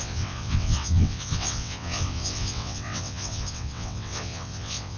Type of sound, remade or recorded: remade